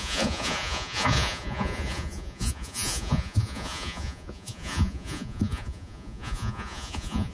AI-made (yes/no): yes